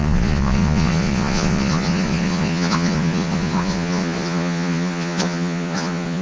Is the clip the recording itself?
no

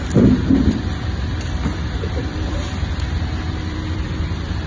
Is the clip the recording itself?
no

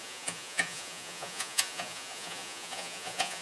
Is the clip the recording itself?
no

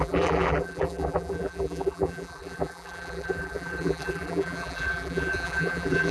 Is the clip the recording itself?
no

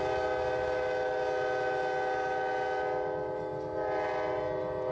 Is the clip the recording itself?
yes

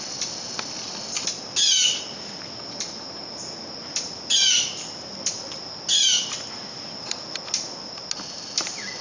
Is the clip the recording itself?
yes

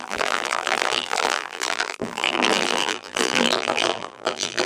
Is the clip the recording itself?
no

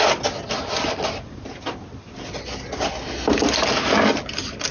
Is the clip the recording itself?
yes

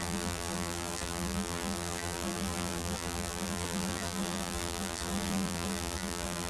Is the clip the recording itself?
no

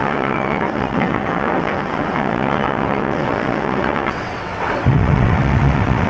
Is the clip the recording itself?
no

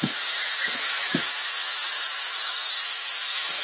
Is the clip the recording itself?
no